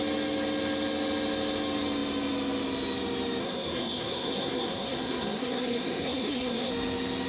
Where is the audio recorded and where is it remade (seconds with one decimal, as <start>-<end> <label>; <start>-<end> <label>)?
0.0-3.4 recorded; 3.4-6.7 remade; 6.7-7.3 recorded